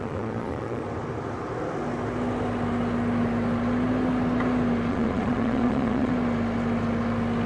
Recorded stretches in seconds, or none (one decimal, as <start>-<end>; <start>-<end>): 0.8-4.9; 6.1-7.5